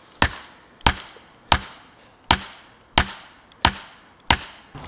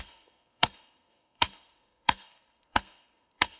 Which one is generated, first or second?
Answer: second